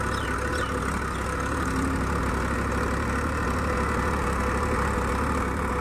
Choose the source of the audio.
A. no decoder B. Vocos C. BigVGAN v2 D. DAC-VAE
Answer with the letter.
A